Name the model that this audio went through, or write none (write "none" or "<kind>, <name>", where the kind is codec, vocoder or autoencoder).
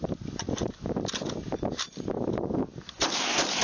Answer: none